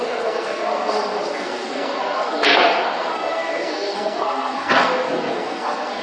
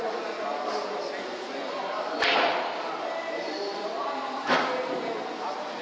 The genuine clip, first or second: second